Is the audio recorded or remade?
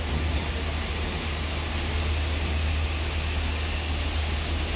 recorded